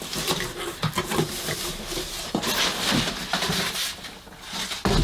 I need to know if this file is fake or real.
real